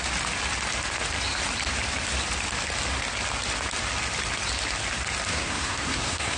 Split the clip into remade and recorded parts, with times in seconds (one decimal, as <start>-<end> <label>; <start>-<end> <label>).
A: 0.0-5.3 recorded; 5.3-6.4 remade